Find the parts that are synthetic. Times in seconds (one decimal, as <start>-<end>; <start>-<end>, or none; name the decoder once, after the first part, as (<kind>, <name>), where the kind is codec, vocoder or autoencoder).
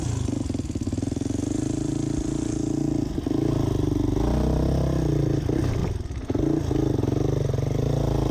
5.8-6.4 (vocoder, BigVGAN v2)